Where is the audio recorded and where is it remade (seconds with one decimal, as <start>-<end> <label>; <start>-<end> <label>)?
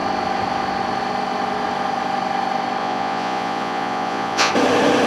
0.0-2.8 recorded; 2.8-4.5 remade; 4.5-5.1 recorded